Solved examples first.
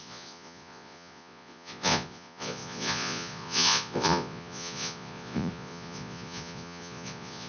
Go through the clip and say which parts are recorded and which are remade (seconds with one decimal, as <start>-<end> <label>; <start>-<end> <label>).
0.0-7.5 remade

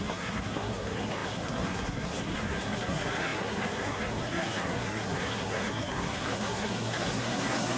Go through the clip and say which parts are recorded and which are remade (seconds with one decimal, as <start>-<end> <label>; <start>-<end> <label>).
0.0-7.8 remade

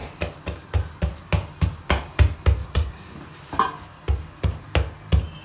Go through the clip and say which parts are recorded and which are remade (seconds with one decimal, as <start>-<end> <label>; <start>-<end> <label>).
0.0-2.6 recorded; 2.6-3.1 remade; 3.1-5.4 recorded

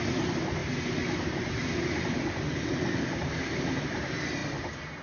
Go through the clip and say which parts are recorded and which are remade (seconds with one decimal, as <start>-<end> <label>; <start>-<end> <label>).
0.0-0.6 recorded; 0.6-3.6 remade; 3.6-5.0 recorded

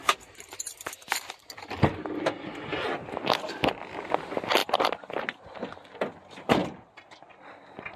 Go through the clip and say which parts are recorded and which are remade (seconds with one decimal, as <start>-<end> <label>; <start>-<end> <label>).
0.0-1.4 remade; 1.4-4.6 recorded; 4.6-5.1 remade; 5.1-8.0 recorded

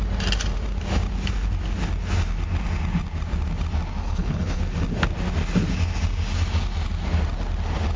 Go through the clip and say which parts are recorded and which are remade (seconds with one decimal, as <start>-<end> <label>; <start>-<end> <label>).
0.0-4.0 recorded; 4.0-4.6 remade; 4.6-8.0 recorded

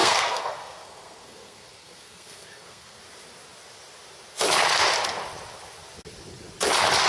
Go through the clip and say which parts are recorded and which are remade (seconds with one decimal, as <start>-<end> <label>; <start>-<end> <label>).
0.0-3.0 remade; 3.0-7.1 recorded

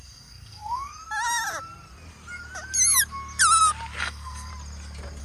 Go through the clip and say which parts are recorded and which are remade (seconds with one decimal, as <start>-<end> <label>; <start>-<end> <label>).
0.0-0.9 remade; 0.9-4.0 recorded; 4.0-4.5 remade; 4.5-5.2 recorded